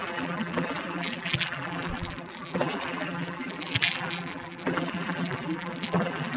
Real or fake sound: fake